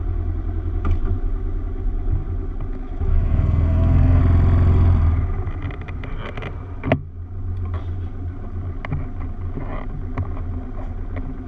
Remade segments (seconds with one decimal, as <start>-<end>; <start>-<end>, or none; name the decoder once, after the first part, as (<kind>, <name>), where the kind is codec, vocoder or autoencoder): 3.1-4.2 (codec, SNAC)